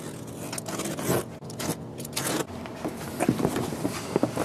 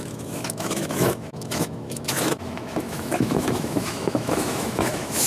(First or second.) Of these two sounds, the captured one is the first